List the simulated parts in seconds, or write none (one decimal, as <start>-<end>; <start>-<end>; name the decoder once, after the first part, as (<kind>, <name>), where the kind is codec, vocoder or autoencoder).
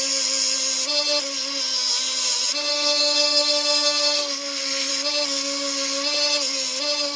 2.7-4.9 (codec, SNAC)